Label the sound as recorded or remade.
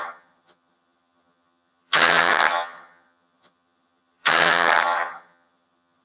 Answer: remade